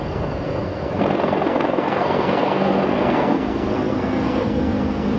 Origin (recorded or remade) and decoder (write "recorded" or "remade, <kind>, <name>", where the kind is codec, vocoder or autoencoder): remade, codec, SNAC